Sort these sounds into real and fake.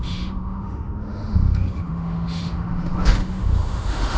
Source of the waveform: fake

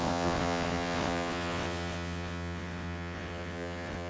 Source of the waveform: fake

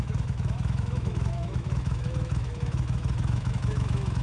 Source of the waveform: fake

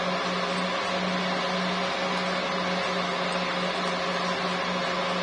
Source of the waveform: real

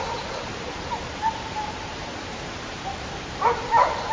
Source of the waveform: fake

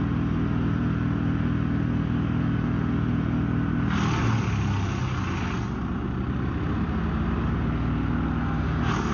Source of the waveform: real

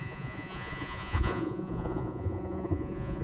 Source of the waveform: fake